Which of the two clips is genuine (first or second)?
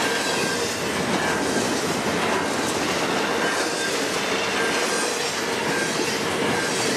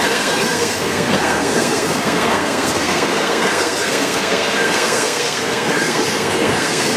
first